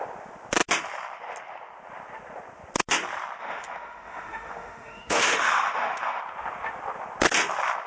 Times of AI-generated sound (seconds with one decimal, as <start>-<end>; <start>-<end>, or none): 3.4-6.2